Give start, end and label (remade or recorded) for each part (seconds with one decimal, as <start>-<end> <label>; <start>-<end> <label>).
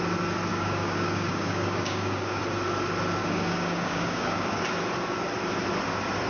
0.0-0.5 recorded; 0.5-2.4 remade; 2.4-3.2 recorded; 3.2-4.6 remade; 4.6-6.3 recorded